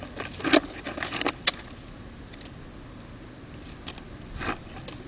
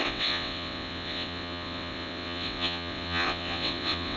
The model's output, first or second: second